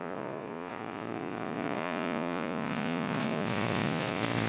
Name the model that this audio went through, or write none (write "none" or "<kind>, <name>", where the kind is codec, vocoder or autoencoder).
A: vocoder, Vocos